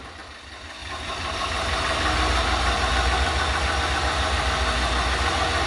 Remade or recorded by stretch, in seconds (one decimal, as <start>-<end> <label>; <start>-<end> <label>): 0.0-0.8 recorded; 0.8-1.4 remade; 1.4-5.7 recorded